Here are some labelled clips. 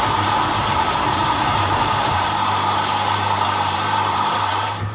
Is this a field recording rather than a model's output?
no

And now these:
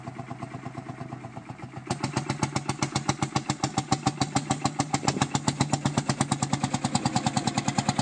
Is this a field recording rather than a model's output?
yes